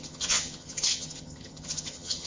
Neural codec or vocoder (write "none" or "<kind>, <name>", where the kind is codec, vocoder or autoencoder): vocoder, HiFi-GAN